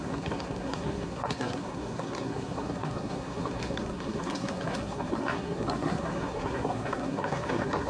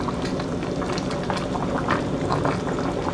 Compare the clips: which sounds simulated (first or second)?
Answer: first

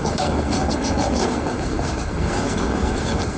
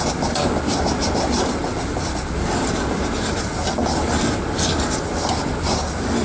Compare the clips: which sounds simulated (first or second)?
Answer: first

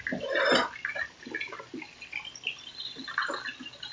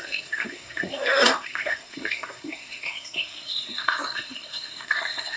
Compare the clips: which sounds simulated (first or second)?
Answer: second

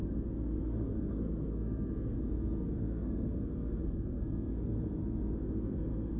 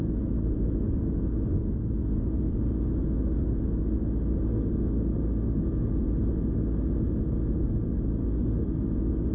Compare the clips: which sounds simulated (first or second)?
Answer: first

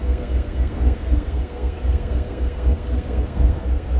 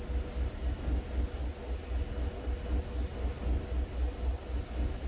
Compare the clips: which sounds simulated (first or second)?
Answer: first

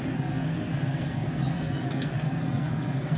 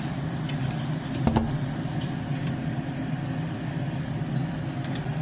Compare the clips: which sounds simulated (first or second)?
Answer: first